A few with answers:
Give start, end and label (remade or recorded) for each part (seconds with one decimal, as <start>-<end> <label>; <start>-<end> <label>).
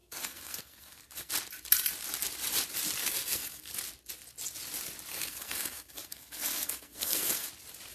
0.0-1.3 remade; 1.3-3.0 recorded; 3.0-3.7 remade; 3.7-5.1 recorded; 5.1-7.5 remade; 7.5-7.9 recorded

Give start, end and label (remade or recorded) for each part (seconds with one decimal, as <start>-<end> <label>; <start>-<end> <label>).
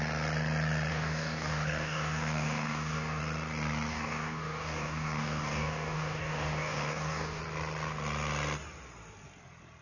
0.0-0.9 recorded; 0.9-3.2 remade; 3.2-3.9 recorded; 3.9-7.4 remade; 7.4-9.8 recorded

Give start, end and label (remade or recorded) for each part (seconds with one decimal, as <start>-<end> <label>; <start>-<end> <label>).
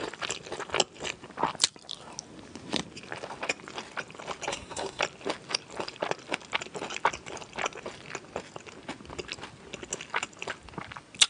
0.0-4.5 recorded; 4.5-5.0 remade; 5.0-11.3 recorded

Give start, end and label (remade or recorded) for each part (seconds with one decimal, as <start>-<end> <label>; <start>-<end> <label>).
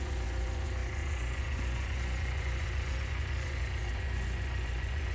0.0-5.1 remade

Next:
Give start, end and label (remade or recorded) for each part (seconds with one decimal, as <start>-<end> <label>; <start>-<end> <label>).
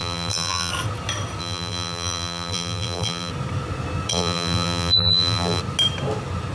0.0-0.7 remade; 0.7-1.4 recorded; 1.4-3.3 remade; 3.3-4.1 recorded; 4.1-5.6 remade; 5.6-6.5 recorded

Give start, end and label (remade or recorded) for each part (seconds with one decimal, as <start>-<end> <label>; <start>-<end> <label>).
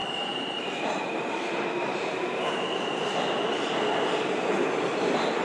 0.0-2.3 remade; 2.3-5.4 recorded